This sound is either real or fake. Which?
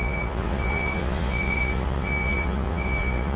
fake